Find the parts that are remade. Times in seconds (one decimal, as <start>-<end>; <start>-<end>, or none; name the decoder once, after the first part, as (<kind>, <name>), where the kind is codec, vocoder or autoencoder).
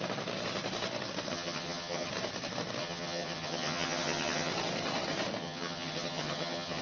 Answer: 1.3-2.1 (vocoder, HiFi-GAN); 2.8-4.5; 5.4-6.8